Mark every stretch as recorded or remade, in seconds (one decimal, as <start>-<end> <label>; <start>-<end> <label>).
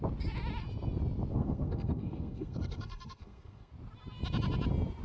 0.0-1.3 recorded; 1.3-3.7 remade; 3.7-5.0 recorded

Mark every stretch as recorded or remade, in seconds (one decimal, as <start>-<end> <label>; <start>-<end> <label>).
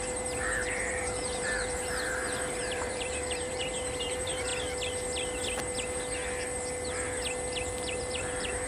0.0-4.5 remade; 4.5-8.0 recorded; 8.0-8.7 remade